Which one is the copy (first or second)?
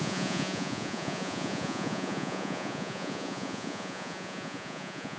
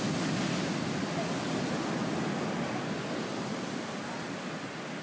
first